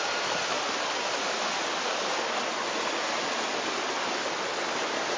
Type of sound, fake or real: real